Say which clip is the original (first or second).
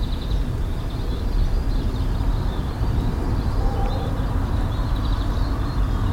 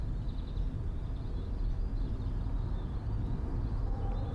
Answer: second